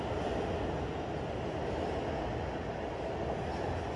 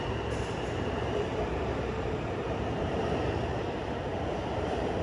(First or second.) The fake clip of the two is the second